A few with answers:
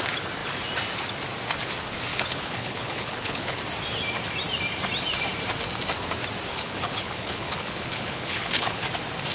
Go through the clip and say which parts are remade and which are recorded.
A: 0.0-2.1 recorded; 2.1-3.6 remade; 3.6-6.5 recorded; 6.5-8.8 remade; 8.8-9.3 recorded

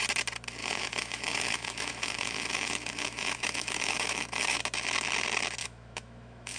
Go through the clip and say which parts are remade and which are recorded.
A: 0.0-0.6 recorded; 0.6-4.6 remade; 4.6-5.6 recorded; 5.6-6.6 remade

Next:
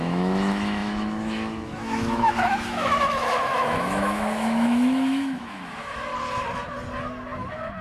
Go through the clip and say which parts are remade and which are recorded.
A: 0.0-6.1 remade; 6.1-7.8 recorded

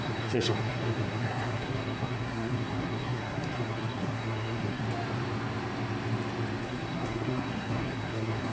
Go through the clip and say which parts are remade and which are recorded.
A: 0.0-4.8 remade; 4.8-6.6 recorded; 6.6-8.5 remade